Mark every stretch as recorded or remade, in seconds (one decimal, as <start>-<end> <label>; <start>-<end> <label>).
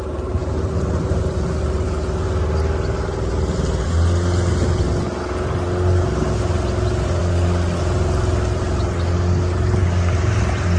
0.0-10.8 recorded